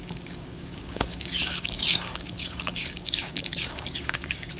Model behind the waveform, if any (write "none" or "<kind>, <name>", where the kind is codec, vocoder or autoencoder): codec, DAC